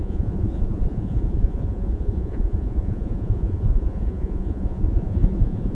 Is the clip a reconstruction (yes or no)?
yes